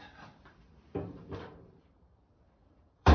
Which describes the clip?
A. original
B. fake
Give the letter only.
B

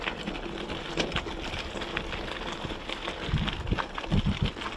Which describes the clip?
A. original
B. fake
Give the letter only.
A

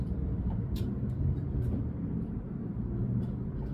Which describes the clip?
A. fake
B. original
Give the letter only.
A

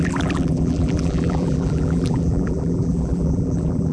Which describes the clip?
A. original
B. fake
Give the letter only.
B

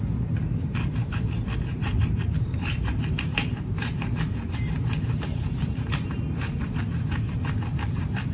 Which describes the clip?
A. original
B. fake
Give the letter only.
B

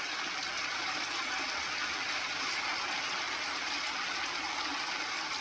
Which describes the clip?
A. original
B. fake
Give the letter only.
A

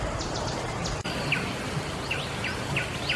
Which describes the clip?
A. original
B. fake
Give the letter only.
A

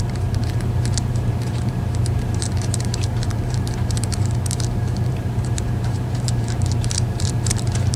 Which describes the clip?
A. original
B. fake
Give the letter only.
B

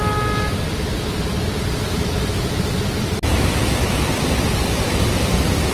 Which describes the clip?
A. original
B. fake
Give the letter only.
A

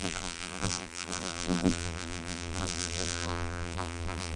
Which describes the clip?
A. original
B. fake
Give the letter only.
B